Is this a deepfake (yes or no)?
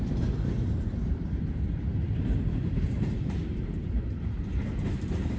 yes